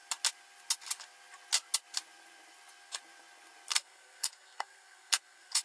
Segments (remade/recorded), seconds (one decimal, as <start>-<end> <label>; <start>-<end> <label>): 0.0-3.7 recorded; 3.7-5.6 remade